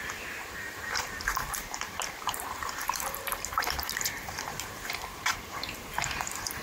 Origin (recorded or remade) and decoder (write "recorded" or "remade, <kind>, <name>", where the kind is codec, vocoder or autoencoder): remade, vocoder, BigVGAN v2